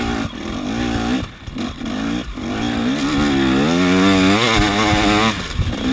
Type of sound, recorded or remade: recorded